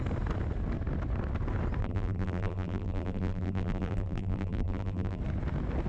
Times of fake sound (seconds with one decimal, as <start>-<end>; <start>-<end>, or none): 1.8-5.2